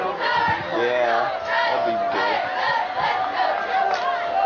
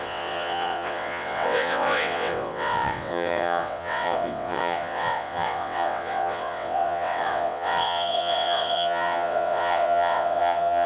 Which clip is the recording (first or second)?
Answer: first